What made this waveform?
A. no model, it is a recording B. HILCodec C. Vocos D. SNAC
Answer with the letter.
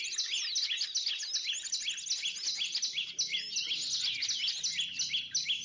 A